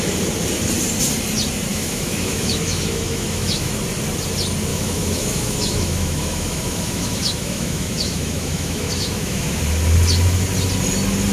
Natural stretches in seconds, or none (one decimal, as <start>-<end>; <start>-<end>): 0.0-1.7; 3.7-4.7; 9.6-11.3